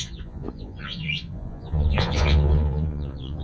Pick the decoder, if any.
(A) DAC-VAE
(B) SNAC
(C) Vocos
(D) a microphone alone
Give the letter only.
C